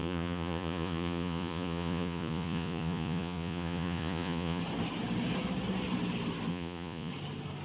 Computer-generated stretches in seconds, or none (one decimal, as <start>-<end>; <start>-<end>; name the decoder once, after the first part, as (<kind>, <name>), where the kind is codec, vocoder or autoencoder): 0.0-4.6 (vocoder, Vocos); 6.5-7.1